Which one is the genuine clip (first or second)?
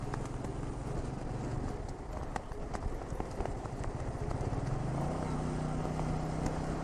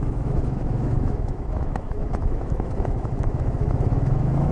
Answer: first